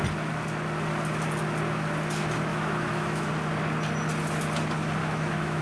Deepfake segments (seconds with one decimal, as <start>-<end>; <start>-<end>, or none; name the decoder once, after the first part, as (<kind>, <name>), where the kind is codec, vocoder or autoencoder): 2.5-3.3 (autoencoder, DAC-VAE); 5.0-5.6